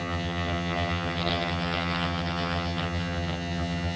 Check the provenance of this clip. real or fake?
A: fake